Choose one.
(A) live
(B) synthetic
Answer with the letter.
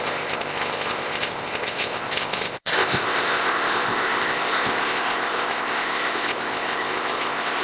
B